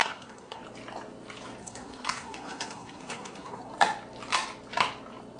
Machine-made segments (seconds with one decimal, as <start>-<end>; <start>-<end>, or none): 0.0-0.6; 1.6-3.7